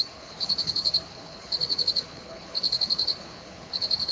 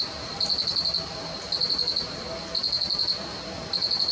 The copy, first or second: first